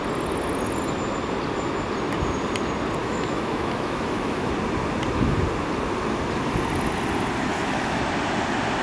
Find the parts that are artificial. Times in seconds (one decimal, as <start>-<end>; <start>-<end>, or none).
3.0-4.5; 7.5-8.0